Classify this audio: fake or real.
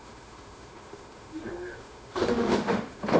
fake